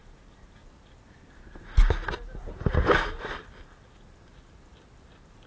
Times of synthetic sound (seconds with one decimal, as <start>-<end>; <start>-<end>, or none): none